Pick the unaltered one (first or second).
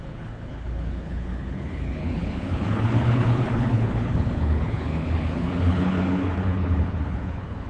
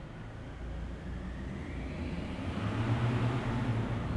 second